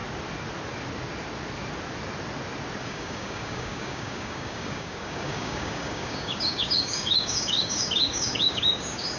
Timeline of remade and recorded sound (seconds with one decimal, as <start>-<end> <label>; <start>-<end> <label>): 0.0-2.8 recorded; 2.8-9.2 remade